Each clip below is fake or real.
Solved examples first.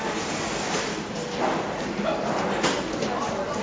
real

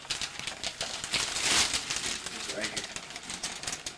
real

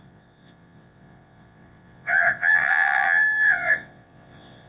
fake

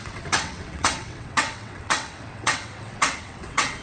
fake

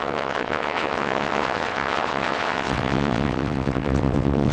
fake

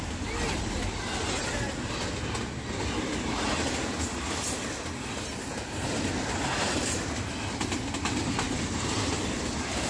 real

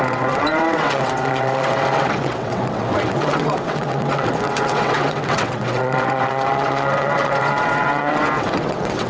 fake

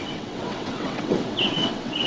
fake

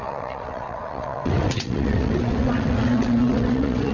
fake